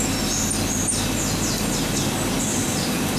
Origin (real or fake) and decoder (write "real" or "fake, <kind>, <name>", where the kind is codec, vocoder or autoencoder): real